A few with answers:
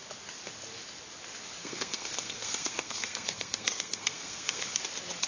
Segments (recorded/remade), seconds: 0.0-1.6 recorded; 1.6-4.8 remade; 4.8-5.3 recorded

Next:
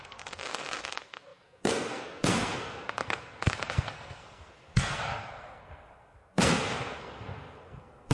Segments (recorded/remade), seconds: 0.0-8.1 remade